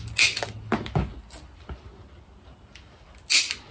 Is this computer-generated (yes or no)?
no